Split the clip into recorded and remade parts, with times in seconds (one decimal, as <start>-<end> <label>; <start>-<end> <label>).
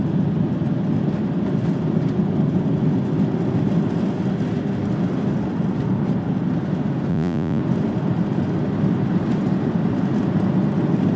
0.0-7.1 recorded; 7.1-7.6 remade; 7.6-11.2 recorded